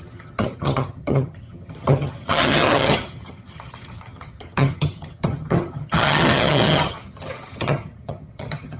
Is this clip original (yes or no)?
no